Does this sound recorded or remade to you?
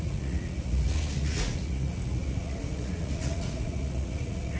remade